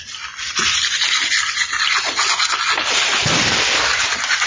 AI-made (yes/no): no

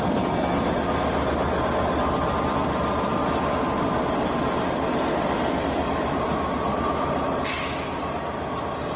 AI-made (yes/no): no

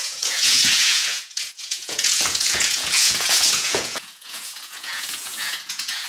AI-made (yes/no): yes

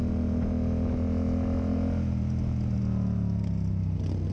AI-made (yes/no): no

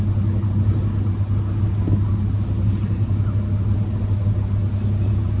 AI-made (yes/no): no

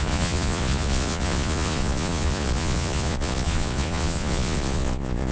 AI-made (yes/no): yes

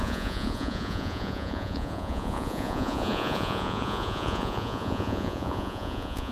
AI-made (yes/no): yes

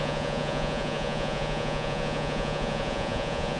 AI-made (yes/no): yes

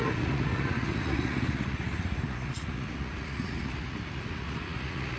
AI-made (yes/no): yes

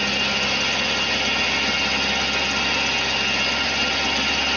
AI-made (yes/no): no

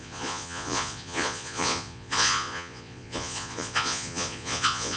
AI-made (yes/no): yes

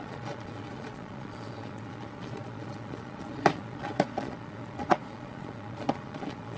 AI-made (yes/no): yes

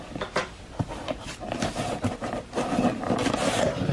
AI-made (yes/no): no